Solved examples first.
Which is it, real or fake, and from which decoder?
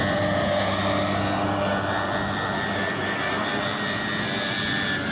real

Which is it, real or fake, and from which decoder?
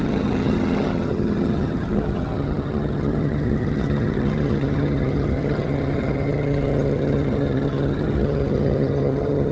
fake, vocoder, HiFi-GAN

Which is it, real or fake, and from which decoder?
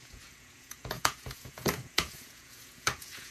fake, vocoder, Vocos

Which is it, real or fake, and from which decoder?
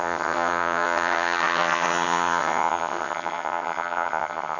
fake, vocoder, HiFi-GAN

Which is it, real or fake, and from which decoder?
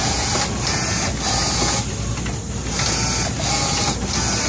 real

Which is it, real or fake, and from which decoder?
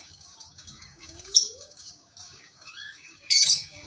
fake, codec, DAC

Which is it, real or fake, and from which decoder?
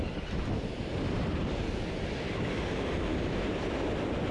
real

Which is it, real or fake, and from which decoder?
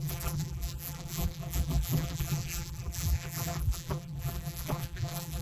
fake, vocoder, BigVGAN v2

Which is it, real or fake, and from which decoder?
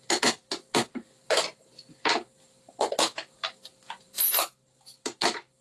real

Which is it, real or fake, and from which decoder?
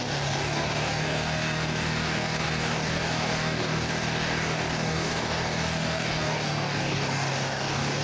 fake, codec, DAC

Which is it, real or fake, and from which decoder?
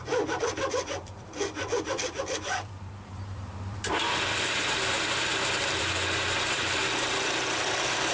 fake, vocoder, BigVGAN v2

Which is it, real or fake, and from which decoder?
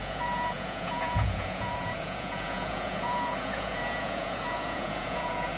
fake, vocoder, Vocos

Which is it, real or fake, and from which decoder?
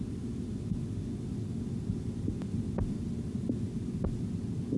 real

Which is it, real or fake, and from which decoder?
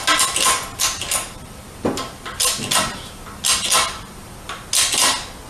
real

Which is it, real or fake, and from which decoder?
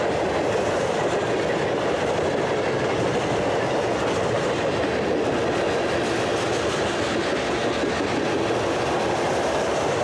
real